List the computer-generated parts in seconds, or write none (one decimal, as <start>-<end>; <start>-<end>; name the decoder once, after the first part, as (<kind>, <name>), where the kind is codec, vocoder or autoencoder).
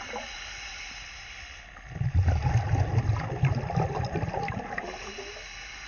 none